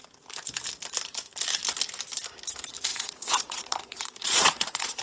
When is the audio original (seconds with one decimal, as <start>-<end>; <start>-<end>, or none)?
0.0-2.9